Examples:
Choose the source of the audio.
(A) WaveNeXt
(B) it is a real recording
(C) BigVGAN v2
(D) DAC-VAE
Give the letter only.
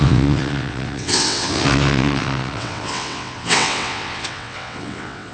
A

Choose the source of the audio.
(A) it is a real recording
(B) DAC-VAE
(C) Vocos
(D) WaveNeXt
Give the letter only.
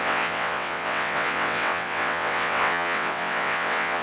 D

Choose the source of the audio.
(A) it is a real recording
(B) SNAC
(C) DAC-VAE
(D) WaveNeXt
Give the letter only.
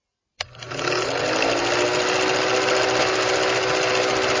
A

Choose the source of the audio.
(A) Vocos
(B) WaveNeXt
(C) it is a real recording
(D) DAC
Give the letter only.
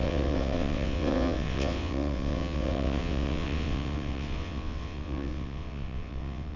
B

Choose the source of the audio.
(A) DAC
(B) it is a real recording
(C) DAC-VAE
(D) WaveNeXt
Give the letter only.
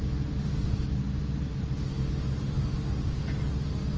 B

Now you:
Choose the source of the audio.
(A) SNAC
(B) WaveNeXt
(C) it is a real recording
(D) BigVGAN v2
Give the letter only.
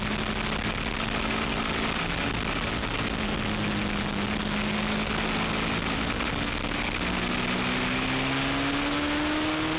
C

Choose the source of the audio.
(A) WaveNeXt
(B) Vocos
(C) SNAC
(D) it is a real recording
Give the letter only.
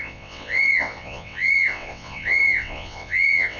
A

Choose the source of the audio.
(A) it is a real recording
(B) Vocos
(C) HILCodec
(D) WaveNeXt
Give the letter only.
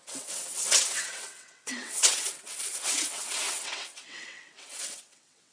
D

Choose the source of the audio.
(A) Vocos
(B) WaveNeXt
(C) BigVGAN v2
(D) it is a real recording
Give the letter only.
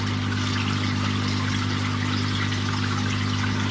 D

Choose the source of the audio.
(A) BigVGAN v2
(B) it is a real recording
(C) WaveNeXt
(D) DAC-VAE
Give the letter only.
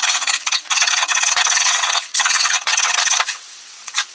C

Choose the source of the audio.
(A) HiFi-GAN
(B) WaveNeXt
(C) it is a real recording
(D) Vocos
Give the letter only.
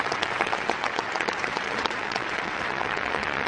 B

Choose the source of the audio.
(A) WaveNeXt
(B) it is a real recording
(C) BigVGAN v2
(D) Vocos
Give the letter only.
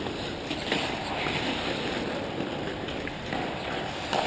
B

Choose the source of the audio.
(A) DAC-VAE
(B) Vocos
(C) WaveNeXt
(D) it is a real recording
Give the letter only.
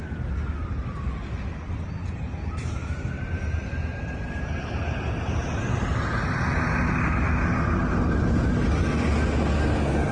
D